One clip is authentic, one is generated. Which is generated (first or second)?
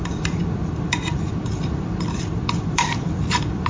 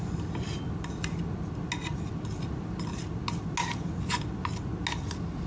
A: first